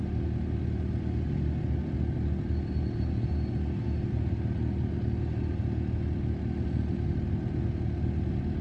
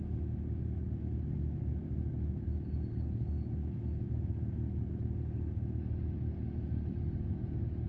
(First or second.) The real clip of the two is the first